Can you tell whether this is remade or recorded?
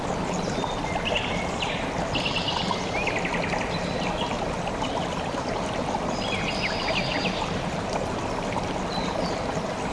recorded